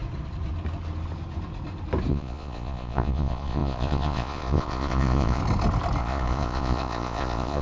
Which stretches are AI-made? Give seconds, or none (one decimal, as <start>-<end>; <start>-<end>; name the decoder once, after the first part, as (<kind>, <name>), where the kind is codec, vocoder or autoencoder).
2.1-5.4 (vocoder, Vocos); 6.0-7.6